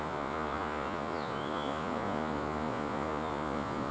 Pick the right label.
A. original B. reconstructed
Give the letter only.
B